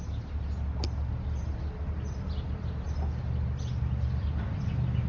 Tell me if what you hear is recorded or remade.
recorded